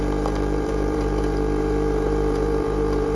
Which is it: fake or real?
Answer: fake